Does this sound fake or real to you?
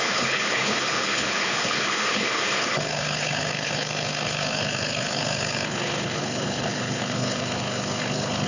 fake